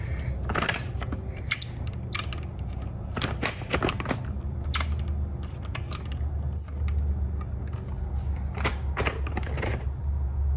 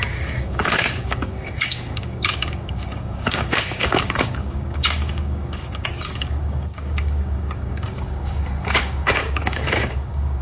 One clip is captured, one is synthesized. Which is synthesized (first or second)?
second